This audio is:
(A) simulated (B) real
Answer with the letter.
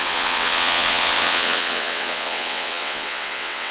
A